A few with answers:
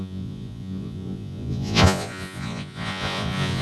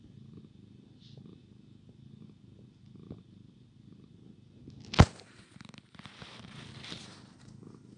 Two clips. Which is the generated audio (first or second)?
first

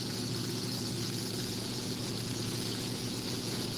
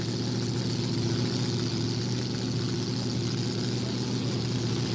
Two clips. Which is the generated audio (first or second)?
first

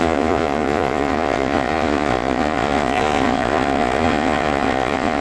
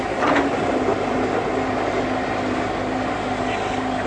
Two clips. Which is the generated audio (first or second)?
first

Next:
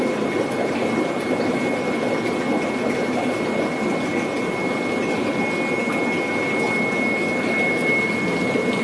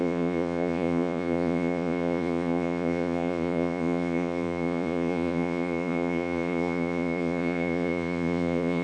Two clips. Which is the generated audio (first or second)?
second